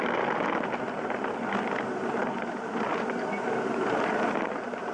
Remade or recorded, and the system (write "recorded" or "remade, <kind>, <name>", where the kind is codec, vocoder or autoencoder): recorded